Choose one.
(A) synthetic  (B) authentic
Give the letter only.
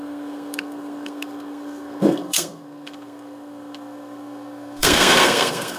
A